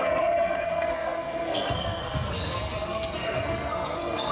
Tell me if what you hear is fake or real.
fake